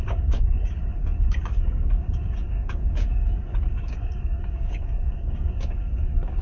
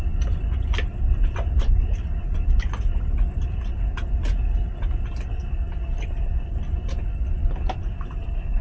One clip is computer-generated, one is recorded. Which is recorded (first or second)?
second